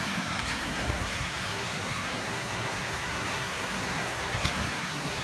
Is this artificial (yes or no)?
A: yes